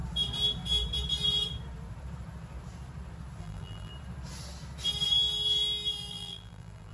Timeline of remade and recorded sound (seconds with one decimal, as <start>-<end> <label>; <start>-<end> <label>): 0.0-3.4 recorded; 3.4-3.9 remade; 3.9-6.1 recorded; 6.1-6.9 remade